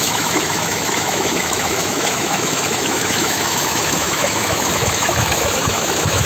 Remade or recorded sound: remade